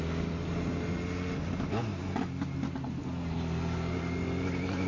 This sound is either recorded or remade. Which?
recorded